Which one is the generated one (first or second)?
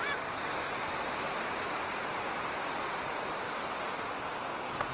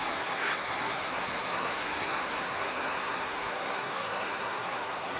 second